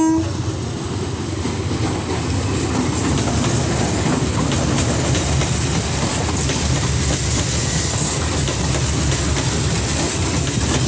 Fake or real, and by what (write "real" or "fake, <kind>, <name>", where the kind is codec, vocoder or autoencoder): real